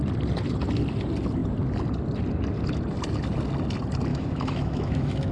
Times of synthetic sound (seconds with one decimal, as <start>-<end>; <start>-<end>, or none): 4.1-5.3